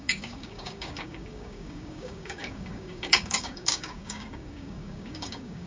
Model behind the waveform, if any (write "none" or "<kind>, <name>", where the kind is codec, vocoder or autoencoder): codec, DAC